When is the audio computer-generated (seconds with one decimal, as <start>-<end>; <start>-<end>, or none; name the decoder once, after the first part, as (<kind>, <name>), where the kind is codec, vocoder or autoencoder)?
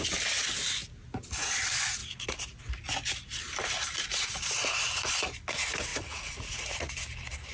2.0-2.7 (vocoder, Vocos); 5.9-6.9